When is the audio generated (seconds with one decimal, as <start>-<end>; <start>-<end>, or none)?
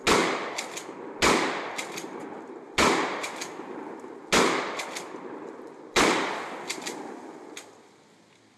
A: none